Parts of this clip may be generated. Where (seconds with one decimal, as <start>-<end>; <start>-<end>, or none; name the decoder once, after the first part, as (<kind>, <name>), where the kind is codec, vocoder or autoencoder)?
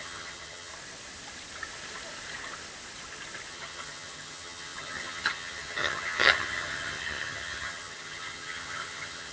0.0-0.7 (vocoder, HiFi-GAN); 3.5-9.3